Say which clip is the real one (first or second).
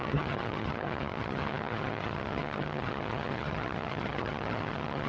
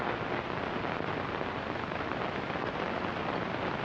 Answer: second